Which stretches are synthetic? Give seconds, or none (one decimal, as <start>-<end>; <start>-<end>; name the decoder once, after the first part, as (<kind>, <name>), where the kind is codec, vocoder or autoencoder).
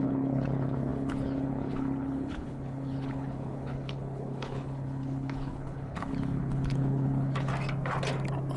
0.0-7.5 (codec, HILCodec)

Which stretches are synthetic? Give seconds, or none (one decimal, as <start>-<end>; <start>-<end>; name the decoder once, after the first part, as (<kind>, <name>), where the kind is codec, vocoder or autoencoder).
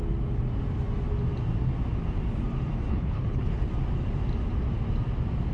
2.9-3.7 (codec, HILCodec)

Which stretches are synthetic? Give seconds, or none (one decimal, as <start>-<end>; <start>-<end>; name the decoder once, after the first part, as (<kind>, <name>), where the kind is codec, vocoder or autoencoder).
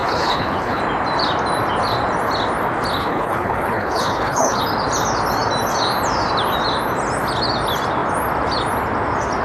0.0-0.8 (codec, HILCodec); 3.0-4.6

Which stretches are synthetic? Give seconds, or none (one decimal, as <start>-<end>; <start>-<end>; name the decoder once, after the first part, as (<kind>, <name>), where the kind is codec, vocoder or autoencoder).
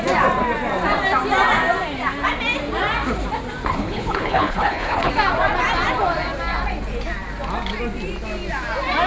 3.7-5.1 (codec, HILCodec)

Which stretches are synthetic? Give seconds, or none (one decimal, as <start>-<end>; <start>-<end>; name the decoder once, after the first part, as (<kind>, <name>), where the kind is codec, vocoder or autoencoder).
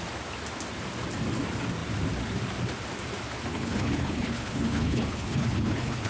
3.5-6.1 (codec, HILCodec)